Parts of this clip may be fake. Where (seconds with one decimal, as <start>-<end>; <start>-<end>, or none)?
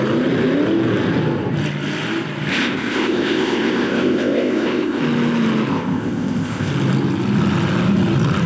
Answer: 2.5-5.0; 5.7-6.7